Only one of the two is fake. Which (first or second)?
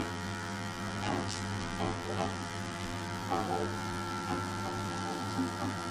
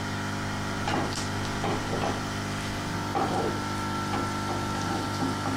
first